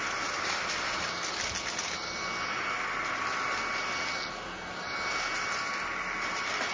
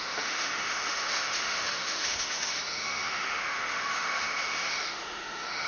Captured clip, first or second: first